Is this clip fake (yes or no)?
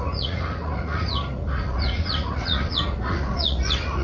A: yes